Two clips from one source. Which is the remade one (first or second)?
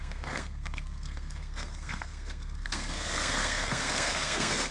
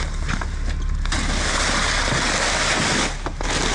first